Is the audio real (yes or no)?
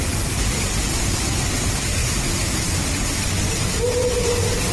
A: yes